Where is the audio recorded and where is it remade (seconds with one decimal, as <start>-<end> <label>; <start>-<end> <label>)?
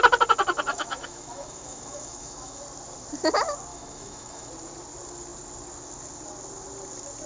0.0-0.7 recorded; 0.7-2.6 remade; 2.6-3.7 recorded; 3.7-4.5 remade; 4.5-7.3 recorded